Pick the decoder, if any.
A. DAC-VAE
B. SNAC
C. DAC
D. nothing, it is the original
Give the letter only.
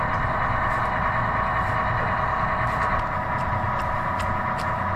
D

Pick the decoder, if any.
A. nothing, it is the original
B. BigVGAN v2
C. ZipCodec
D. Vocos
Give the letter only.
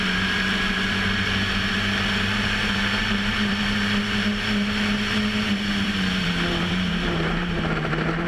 B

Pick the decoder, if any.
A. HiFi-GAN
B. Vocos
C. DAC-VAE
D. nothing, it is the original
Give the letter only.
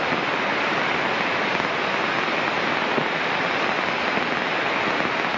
D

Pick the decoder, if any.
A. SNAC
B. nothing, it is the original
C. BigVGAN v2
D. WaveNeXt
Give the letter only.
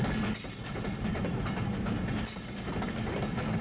B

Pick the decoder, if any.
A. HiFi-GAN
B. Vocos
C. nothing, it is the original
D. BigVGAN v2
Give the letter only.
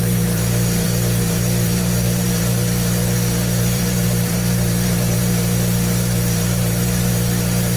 D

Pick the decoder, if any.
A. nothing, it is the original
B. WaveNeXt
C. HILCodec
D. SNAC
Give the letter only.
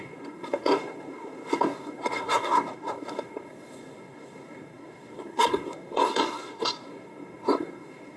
D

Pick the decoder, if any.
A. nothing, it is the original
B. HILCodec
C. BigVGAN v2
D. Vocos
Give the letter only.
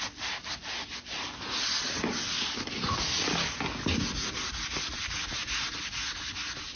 A